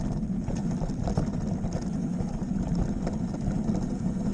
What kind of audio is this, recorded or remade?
recorded